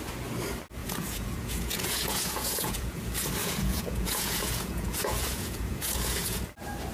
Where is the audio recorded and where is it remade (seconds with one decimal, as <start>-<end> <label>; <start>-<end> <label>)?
0.0-0.8 recorded; 0.8-3.0 remade; 3.0-3.4 recorded; 3.4-6.4 remade; 6.4-6.9 recorded